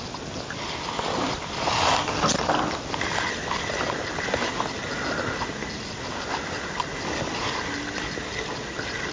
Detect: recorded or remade recorded